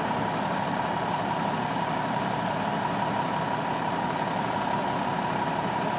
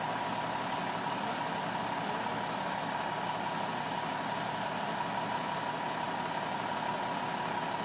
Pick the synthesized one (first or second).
first